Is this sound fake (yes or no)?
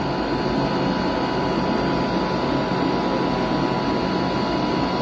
no